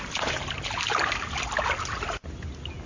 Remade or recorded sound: recorded